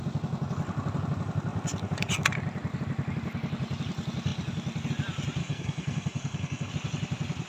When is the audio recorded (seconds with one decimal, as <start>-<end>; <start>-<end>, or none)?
0.0-5.4; 6.7-7.5